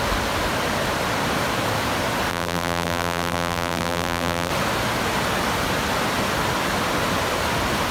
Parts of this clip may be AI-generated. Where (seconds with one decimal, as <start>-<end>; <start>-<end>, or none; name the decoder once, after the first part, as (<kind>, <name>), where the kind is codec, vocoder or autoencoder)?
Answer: 2.3-4.5 (vocoder, BigVGAN v2)